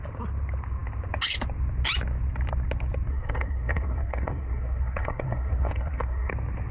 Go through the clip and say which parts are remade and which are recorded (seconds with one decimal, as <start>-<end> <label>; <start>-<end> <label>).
0.0-3.1 recorded; 3.1-6.3 remade; 6.3-6.7 recorded